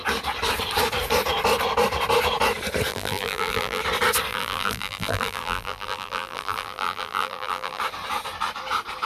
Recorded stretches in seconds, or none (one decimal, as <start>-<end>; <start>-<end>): 0.0-2.9; 3.8-4.3; 7.8-9.1